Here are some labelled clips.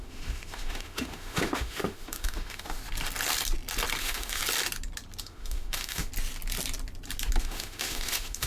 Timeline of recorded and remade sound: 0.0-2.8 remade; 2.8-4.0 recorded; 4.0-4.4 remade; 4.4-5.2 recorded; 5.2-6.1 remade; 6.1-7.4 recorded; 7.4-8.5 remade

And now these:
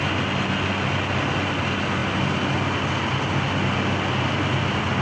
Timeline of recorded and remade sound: 0.0-5.0 recorded

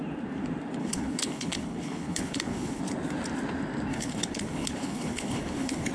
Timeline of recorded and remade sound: 0.0-0.8 recorded; 0.8-2.8 remade; 2.8-3.9 recorded; 3.9-5.9 remade

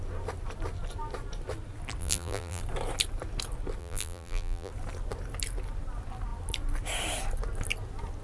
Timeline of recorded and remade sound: 0.0-2.0 recorded; 2.0-2.6 remade; 2.6-3.8 recorded; 3.8-4.7 remade; 4.7-8.2 recorded

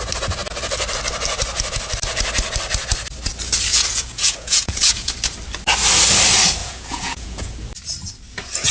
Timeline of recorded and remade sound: 0.0-3.7 recorded; 3.7-5.1 remade; 5.1-6.6 recorded; 6.6-7.5 remade; 7.5-8.7 recorded